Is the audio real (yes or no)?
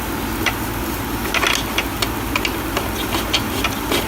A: yes